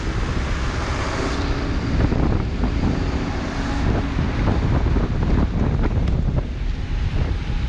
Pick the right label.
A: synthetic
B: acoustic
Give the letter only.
B